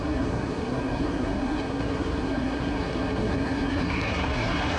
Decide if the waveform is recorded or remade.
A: remade